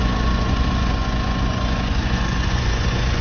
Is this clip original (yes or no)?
no